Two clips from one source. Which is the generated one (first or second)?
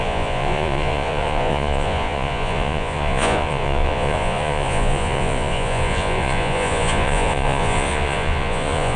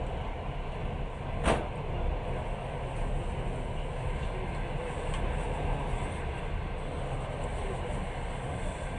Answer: first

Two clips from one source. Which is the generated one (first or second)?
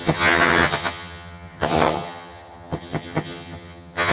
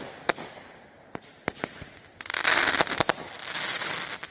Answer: first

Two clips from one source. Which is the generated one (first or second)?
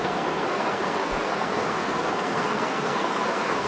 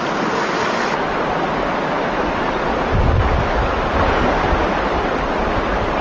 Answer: first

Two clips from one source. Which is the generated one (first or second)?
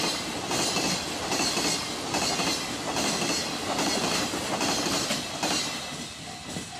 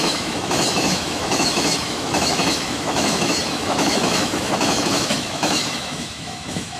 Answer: second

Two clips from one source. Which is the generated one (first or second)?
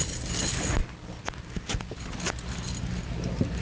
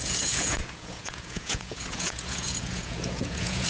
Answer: second